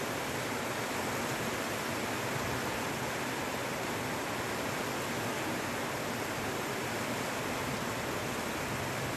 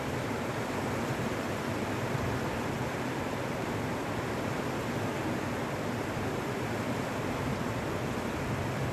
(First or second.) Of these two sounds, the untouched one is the first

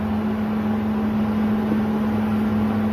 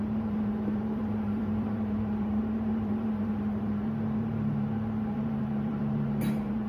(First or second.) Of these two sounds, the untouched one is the first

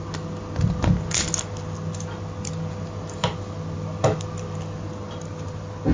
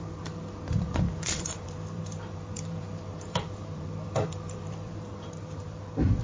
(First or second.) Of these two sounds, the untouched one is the first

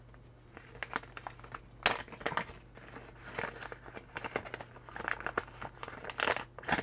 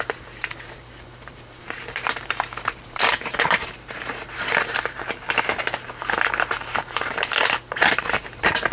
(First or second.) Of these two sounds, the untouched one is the first